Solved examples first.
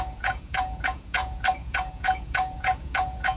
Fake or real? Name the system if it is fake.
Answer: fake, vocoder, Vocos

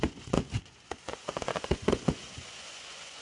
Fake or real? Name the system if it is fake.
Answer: fake, vocoder, Vocos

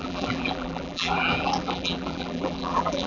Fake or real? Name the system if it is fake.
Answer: fake, vocoder, BigVGAN v2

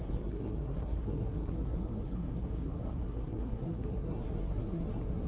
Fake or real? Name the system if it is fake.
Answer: fake, codec, SNAC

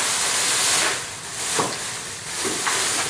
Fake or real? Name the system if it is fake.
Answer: real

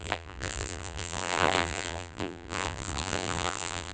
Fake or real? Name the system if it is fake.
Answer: fake, vocoder, BigVGAN v2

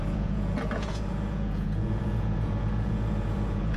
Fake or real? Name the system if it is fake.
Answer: fake, vocoder, Vocos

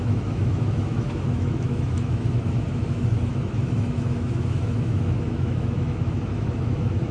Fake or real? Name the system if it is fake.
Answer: fake, autoencoder, DAC-VAE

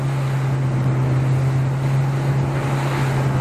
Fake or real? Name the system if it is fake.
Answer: real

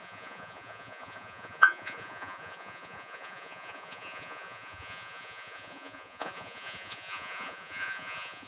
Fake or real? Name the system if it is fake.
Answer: fake, vocoder, Vocos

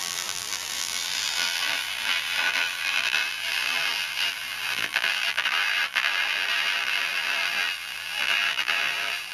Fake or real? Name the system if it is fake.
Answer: fake, vocoder, BigVGAN v2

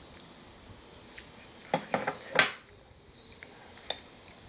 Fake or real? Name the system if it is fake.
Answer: real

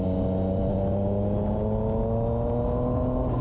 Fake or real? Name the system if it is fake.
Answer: real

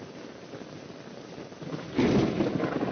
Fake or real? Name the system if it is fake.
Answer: real